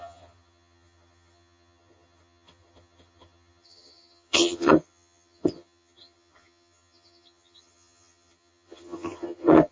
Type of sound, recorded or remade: remade